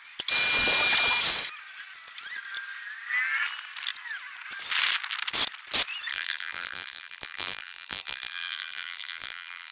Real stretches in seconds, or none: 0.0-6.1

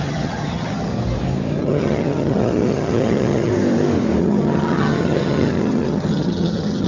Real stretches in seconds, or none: 0.9-1.6; 3.5-4.2

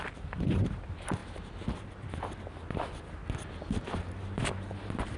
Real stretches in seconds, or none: 1.2-4.3

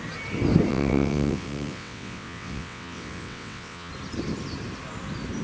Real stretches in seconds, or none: 0.0-0.7; 3.9-5.4

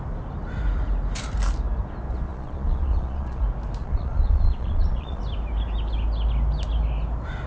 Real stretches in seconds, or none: 0.0-2.3; 3.4-3.8; 5.2-7.5

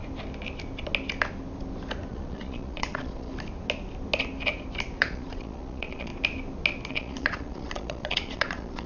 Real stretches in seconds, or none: 0.0-2.1; 3.3-5.0; 6.1-6.9

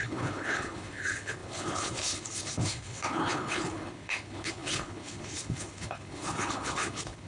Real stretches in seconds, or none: none